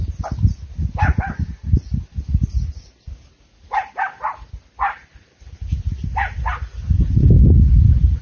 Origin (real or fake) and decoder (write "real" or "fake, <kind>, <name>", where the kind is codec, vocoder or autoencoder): real